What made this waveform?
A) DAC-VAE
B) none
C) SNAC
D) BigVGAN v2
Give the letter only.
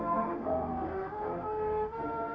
A